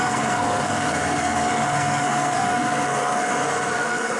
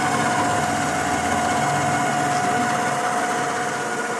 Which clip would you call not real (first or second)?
first